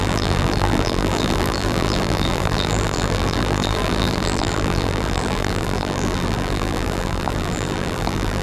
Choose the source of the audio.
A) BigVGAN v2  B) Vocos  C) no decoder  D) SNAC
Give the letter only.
A